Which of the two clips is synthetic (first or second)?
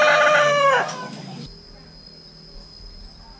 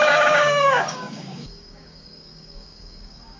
second